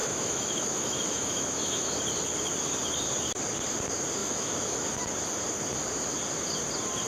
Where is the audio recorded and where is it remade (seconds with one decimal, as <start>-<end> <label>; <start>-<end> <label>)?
0.0-2.0 remade; 2.0-4.2 recorded; 4.2-5.0 remade; 5.0-7.1 recorded